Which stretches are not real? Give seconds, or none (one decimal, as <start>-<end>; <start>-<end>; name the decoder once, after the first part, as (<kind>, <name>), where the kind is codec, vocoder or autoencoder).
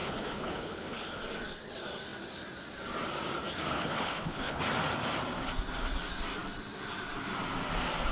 0.0-1.2 (codec, HILCodec); 3.7-4.6